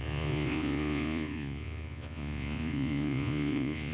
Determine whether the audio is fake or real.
fake